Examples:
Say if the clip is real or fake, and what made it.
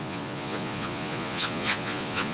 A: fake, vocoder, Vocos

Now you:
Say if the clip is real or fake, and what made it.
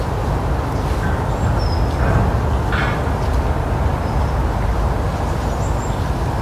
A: real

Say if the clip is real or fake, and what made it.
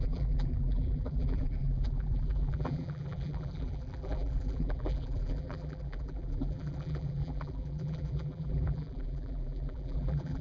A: fake, vocoder, BigVGAN v2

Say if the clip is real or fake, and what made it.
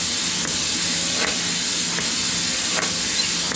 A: real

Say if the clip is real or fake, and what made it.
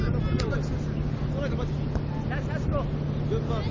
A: real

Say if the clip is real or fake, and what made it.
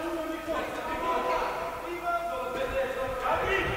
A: real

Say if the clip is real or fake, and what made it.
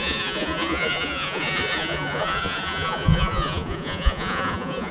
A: fake, vocoder, Vocos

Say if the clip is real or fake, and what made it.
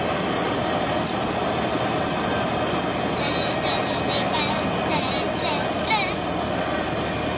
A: real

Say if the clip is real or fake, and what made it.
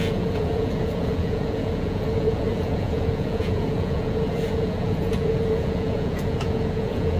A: fake, vocoder, Vocos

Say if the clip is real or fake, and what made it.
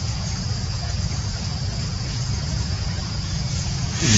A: fake, vocoder, Vocos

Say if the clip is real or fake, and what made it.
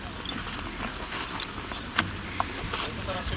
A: real